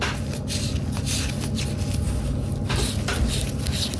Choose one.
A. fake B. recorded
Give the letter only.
B